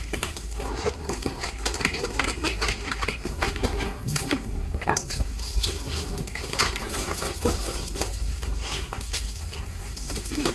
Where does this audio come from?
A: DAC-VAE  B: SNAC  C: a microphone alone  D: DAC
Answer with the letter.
B